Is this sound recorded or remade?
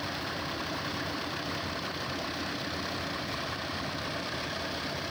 remade